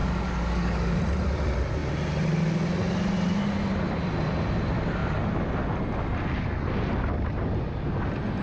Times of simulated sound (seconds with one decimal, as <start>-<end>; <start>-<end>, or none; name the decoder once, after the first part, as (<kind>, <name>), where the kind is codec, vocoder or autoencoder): 0.0-1.0 (codec, DAC)